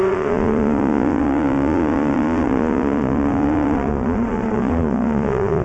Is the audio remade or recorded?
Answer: remade